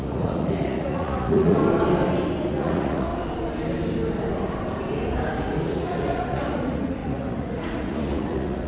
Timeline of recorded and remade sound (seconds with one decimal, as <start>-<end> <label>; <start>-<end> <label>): 0.0-1.6 remade; 1.6-2.5 recorded; 2.5-3.1 remade; 3.1-5.6 recorded; 5.6-8.7 remade